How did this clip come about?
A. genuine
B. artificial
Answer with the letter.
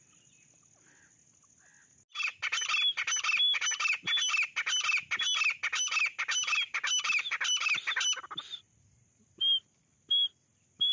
A